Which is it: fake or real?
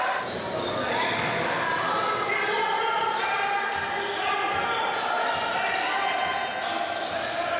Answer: real